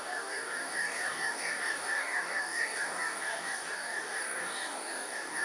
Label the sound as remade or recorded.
remade